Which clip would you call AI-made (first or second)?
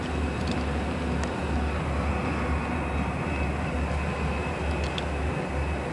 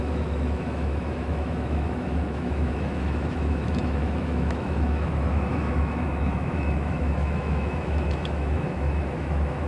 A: second